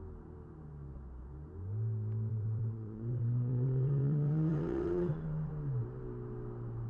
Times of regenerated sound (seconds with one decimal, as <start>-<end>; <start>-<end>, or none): 2.3-5.5